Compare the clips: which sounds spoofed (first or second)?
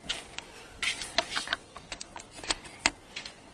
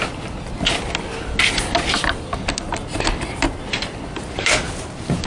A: first